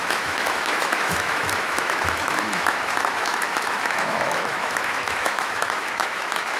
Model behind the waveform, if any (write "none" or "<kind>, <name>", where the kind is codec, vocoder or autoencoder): autoencoder, DAC-VAE